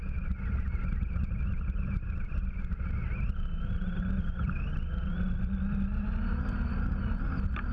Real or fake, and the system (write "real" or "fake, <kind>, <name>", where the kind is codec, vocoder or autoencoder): real